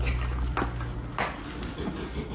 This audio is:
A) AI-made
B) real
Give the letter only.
B